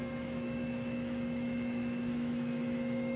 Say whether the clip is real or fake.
fake